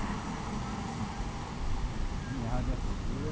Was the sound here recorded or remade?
recorded